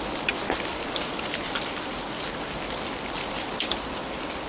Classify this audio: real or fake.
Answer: real